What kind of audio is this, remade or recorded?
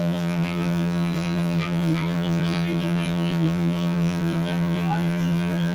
remade